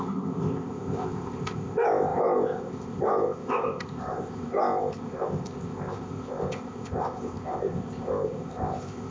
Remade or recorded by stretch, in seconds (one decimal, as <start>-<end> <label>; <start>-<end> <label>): 0.0-9.1 remade